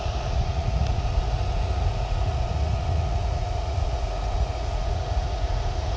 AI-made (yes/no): yes